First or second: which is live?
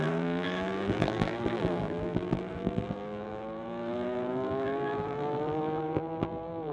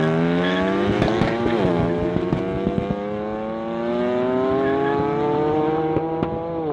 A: second